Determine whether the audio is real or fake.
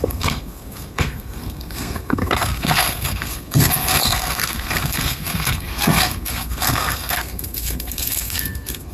fake